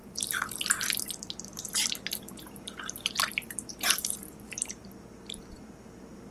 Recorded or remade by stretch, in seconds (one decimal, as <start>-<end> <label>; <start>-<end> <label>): 0.0-3.8 remade; 3.8-6.3 recorded